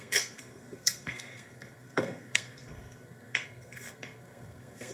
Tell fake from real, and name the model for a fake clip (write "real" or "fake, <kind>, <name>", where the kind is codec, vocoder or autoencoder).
fake, codec, SNAC